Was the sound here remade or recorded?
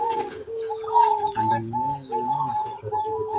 remade